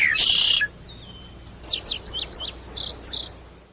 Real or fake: real